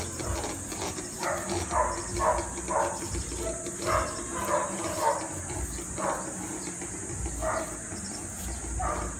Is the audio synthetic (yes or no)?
no